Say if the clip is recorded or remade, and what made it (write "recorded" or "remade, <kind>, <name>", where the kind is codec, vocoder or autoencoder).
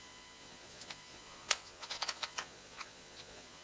remade, vocoder, Vocos